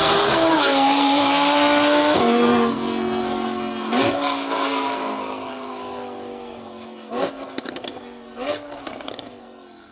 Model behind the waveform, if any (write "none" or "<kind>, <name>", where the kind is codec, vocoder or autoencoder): codec, SNAC